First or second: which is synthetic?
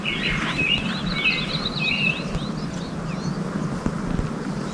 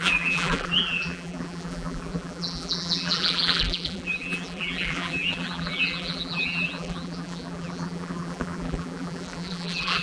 second